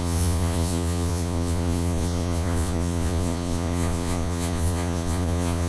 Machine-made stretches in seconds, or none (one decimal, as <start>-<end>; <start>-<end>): 0.0-5.7